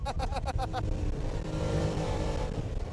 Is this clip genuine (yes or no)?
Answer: no